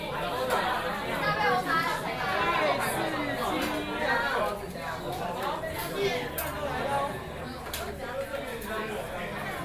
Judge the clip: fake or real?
real